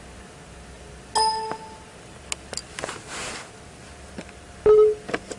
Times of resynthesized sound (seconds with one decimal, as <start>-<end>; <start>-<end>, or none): none